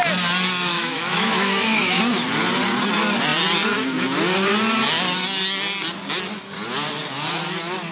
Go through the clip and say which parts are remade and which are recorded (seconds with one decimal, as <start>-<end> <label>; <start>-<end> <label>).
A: 0.0-0.7 recorded; 0.7-2.0 remade; 2.0-7.9 recorded